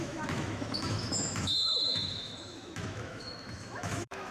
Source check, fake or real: fake